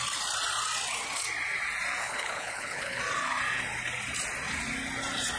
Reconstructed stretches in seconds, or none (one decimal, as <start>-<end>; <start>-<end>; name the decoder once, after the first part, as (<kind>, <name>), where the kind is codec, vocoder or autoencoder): 2.0-3.0 (codec, HILCodec)